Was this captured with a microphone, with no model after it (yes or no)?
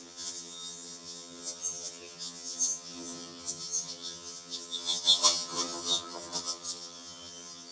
no